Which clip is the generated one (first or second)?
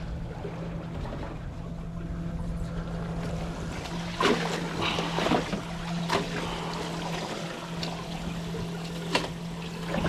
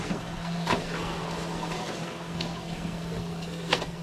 second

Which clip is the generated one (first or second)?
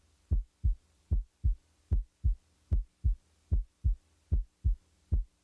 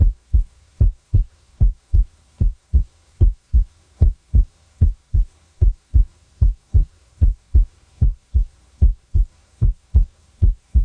second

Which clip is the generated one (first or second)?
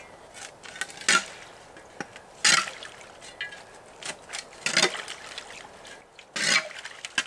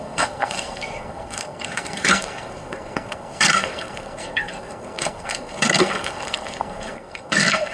second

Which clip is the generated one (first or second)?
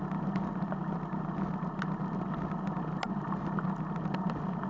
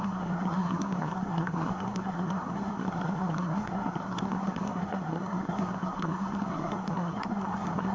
second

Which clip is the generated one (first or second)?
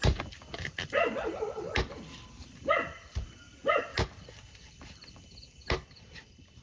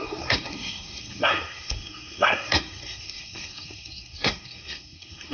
second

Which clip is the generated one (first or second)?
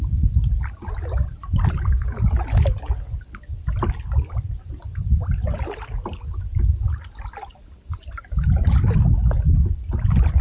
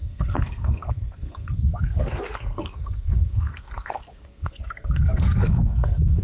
second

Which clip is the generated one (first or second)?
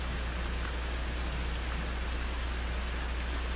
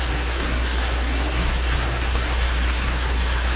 second